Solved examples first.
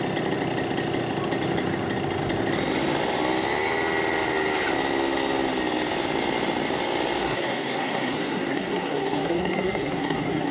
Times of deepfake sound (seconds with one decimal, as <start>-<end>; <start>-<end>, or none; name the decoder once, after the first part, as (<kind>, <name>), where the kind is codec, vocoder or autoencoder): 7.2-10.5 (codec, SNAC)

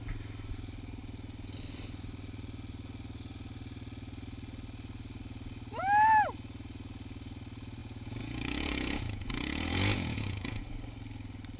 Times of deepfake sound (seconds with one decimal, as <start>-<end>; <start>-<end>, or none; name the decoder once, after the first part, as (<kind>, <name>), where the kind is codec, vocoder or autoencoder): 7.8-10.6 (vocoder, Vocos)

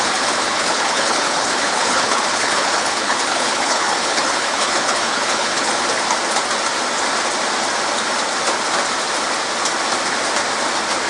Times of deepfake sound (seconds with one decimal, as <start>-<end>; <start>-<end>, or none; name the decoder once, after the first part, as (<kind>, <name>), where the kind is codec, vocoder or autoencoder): 0.0-5.7 (codec, HILCodec)

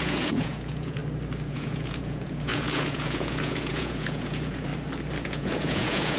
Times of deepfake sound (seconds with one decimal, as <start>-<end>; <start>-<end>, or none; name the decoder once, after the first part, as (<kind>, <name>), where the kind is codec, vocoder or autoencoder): 0.0-1.0 (vocoder, Vocos); 1.5-4.7; 5.2-6.2